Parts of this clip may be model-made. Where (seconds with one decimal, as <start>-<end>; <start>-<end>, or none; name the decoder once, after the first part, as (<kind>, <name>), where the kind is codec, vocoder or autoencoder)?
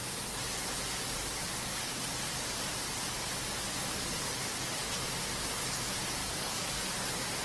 6.2-6.8 (codec, DAC)